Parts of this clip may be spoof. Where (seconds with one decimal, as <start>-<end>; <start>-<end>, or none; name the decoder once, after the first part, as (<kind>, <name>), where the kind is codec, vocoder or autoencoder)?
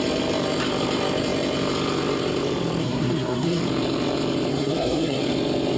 2.8-3.6 (codec, SNAC); 4.5-5.2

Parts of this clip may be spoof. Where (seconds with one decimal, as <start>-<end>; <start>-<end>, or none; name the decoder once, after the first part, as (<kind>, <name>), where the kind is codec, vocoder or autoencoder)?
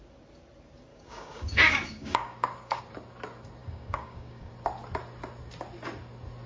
0.9-2.8 (codec, DAC); 3.6-4.5